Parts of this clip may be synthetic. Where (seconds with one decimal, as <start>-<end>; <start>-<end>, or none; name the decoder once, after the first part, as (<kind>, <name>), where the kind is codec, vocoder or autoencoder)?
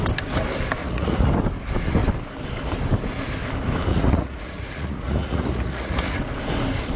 0.8-1.3 (vocoder, Vocos); 3.9-6.2